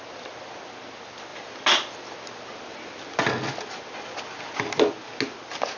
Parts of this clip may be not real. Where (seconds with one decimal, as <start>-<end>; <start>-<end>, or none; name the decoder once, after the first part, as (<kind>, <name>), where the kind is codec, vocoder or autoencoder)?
none